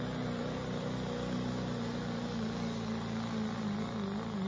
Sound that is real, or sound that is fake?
real